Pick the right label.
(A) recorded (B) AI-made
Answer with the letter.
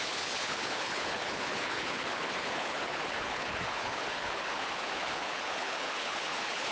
B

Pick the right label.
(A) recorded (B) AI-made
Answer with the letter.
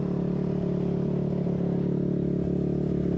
A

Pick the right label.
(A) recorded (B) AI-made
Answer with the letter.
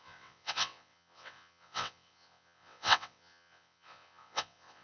B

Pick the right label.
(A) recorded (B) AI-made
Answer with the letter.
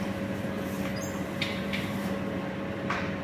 B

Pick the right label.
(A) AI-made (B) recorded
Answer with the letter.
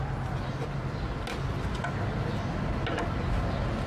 B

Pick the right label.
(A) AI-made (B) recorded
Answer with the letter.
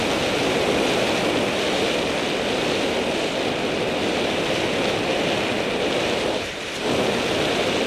B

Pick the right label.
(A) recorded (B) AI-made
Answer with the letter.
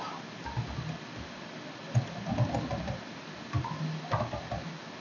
A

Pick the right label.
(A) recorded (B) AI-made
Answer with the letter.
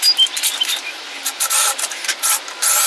A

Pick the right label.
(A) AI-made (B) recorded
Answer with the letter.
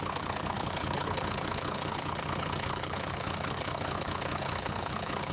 A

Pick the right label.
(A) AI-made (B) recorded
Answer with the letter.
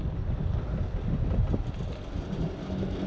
B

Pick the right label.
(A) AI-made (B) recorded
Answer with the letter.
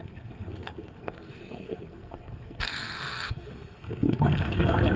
A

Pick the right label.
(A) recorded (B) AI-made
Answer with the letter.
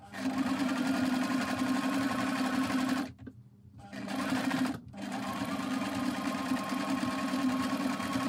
A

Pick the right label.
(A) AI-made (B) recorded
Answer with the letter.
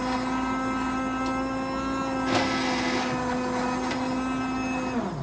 B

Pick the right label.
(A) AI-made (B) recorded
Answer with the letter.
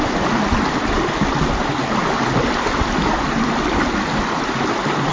B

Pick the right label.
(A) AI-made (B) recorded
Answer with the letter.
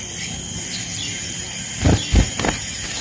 B